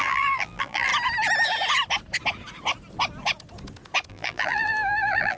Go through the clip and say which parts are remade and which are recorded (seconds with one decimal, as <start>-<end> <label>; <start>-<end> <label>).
0.0-0.9 remade; 0.9-4.1 recorded; 4.1-5.4 remade